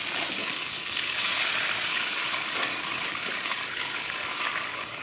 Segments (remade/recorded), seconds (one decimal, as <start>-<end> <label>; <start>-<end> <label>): 0.0-0.4 recorded; 0.4-1.4 remade; 1.4-1.9 recorded; 1.9-5.0 remade

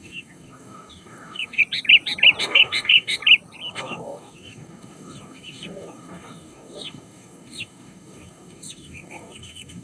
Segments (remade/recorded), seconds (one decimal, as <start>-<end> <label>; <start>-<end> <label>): 0.0-1.6 remade; 1.6-2.4 recorded; 2.4-3.2 remade; 3.2-3.7 recorded; 3.7-9.8 remade

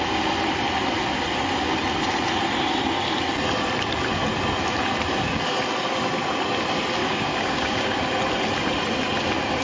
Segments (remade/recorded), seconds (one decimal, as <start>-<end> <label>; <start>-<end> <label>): 0.0-7.0 recorded; 7.0-8.0 remade; 8.0-9.6 recorded

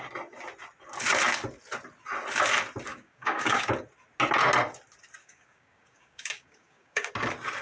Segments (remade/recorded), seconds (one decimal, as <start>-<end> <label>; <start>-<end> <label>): 0.0-2.9 recorded; 2.9-3.7 remade; 3.7-5.2 recorded; 5.2-7.1 remade; 7.1-7.6 recorded

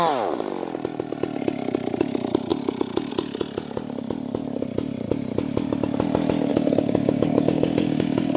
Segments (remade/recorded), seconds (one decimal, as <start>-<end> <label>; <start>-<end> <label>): 0.0-6.5 recorded; 6.5-8.4 remade